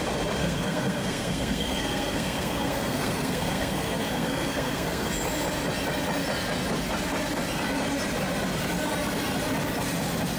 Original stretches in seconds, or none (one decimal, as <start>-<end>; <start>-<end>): 0.0-0.4; 5.1-10.4